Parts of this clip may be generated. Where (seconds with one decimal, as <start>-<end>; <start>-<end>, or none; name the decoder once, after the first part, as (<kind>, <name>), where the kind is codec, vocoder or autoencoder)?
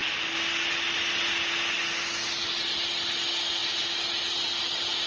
none